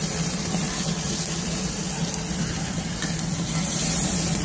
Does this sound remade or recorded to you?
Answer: recorded